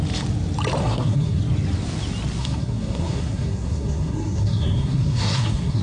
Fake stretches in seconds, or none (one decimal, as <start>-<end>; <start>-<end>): 0.8-1.4; 2.4-5.8